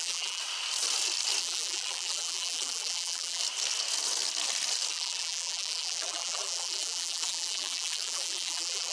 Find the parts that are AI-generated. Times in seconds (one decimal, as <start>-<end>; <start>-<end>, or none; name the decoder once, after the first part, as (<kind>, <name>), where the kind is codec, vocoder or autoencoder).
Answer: 0.0-0.4 (vocoder, BigVGAN v2); 1.4-3.4; 4.9-8.9